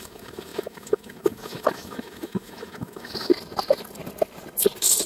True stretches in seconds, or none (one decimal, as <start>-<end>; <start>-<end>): 3.3-5.1